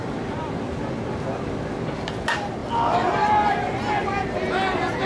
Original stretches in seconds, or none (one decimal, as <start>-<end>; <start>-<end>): 0.0-5.1